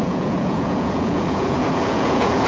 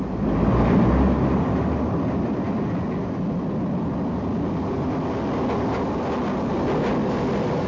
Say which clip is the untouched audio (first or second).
second